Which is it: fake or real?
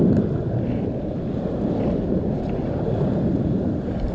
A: real